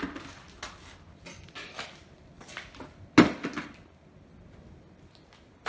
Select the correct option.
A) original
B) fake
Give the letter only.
A